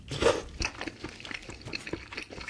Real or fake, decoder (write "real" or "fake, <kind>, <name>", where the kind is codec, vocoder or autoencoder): real